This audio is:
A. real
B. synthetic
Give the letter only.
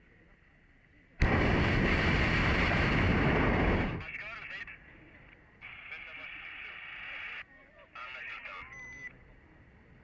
A